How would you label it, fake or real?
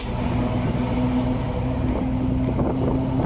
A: real